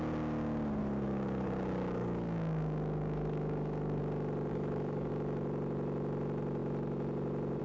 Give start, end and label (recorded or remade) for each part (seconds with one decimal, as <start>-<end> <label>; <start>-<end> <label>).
0.0-0.8 recorded; 0.8-4.0 remade; 4.0-4.5 recorded; 4.5-5.1 remade; 5.1-7.6 recorded

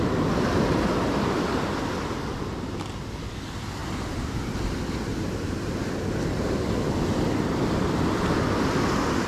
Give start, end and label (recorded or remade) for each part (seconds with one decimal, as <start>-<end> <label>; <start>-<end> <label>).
0.0-9.3 recorded